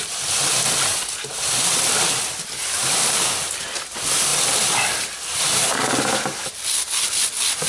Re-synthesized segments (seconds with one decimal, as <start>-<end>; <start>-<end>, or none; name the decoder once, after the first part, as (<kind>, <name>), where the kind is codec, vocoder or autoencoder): none